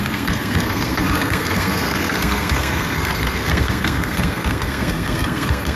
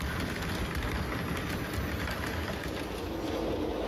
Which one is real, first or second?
second